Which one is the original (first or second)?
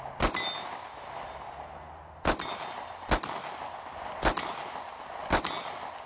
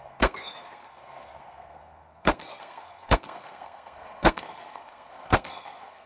first